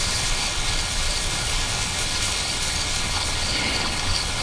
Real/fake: fake